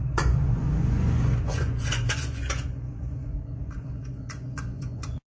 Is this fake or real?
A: fake